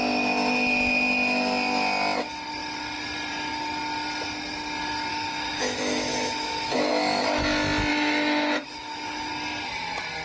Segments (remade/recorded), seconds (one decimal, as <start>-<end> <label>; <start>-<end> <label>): 0.0-5.1 recorded; 5.1-6.9 remade; 6.9-7.9 recorded; 7.9-9.3 remade; 9.3-10.2 recorded